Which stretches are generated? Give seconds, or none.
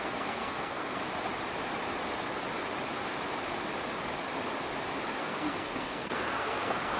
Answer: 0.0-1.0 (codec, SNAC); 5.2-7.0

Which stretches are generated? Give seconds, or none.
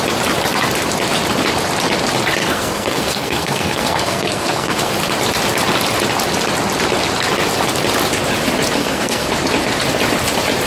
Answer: 2.4-4.9 (codec, SNAC); 8.8-9.3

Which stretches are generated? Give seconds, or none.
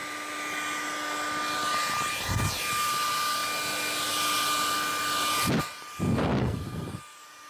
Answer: 6.4-7.0 (codec, SNAC)